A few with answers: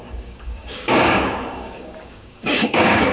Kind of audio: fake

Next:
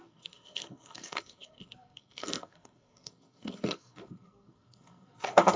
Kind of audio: fake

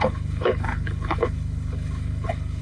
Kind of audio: fake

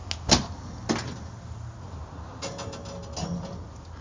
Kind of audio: real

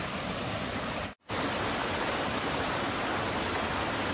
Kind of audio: real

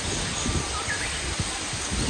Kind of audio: real